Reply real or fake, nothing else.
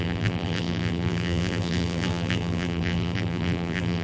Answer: fake